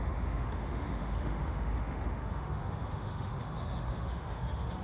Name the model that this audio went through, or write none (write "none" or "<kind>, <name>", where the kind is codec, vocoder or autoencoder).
autoencoder, DAC-VAE